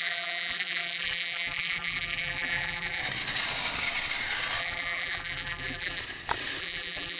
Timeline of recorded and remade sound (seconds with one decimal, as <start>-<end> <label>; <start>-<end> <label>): 0.0-3.0 remade; 3.0-4.6 recorded; 4.6-6.0 remade; 6.0-6.6 recorded; 6.6-7.2 remade